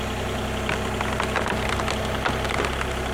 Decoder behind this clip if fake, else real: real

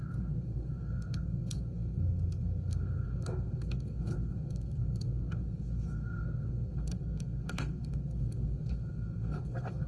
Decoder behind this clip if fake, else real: fake, codec, SNAC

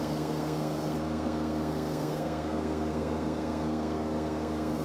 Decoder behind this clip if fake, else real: fake, codec, SNAC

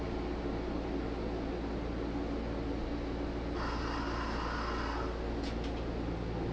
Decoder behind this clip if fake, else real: real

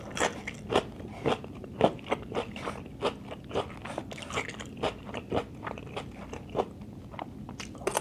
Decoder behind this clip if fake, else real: real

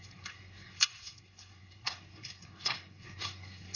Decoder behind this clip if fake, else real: fake, codec, SNAC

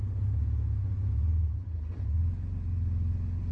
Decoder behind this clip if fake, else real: real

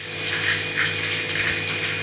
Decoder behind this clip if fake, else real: real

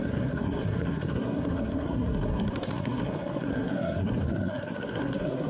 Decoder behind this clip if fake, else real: fake, codec, SNAC